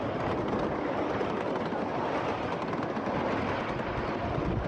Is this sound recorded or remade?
recorded